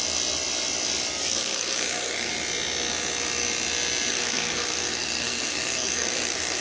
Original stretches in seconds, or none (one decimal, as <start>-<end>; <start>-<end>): 0.0-1.4; 2.3-4.1